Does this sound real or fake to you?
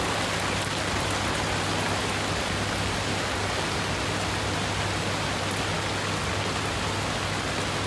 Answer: real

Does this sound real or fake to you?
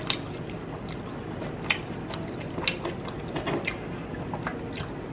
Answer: real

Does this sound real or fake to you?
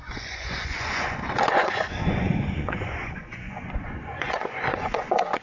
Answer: fake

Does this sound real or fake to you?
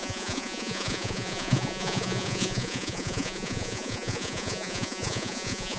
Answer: fake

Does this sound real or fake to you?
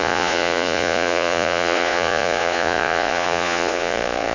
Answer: fake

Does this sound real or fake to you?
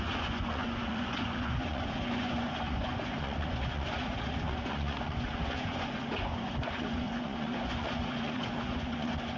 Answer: fake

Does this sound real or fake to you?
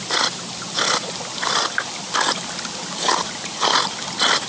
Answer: real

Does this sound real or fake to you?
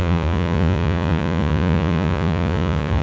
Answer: fake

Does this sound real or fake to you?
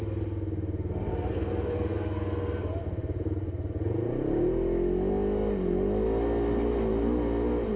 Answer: real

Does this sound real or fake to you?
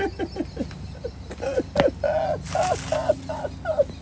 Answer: real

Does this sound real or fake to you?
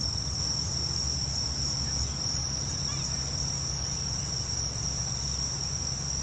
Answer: real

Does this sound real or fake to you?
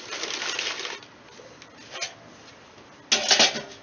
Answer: real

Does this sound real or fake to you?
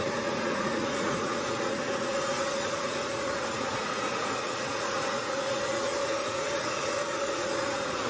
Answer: fake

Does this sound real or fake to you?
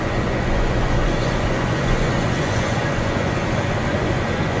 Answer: fake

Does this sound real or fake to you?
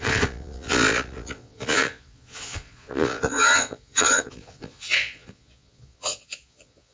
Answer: fake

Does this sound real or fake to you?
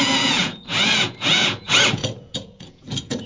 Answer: fake